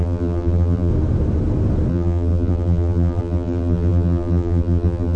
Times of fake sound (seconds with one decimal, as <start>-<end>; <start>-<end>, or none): 0.0-0.9; 1.9-5.2